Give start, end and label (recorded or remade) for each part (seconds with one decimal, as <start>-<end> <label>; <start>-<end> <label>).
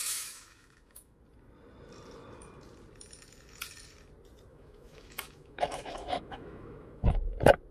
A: 0.0-1.2 remade; 1.2-4.5 recorded; 4.5-7.2 remade; 7.2-7.7 recorded